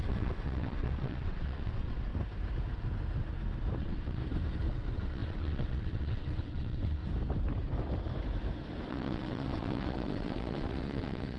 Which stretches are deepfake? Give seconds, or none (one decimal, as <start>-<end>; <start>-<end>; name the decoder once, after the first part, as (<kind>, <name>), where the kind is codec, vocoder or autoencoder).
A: 0.0-2.1 (vocoder, WaveNeXt); 3.8-4.2; 4.7-7.0; 8.9-11.4